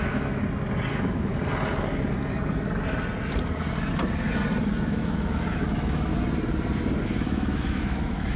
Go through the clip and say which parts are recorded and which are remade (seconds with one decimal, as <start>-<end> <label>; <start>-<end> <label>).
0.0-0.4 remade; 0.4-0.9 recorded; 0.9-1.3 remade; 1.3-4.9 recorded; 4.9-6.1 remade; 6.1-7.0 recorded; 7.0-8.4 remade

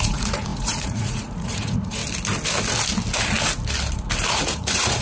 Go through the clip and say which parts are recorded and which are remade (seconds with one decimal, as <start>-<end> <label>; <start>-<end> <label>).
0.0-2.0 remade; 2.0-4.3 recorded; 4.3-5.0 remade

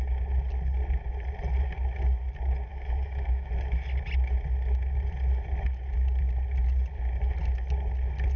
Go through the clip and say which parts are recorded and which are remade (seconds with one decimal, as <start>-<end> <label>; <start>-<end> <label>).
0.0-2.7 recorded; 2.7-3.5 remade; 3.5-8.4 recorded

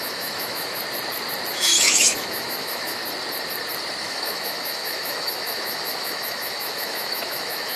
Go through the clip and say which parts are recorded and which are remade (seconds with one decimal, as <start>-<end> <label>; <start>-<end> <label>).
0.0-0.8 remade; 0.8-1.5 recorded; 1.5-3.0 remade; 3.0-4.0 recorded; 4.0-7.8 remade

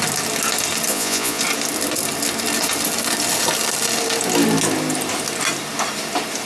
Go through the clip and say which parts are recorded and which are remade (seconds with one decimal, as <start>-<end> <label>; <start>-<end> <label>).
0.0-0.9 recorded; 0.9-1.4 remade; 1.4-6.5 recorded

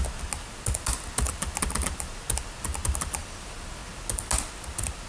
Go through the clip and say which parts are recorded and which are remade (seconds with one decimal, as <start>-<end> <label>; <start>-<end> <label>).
0.0-5.1 recorded